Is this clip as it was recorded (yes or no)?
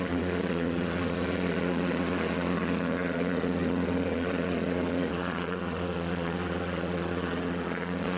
no